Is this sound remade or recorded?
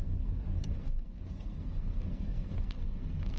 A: remade